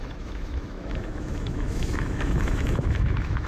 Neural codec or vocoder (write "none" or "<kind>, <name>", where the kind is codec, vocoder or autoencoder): autoencoder, DAC-VAE